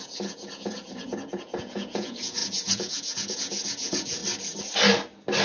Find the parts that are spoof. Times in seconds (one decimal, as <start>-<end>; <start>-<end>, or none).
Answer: 0.0-4.2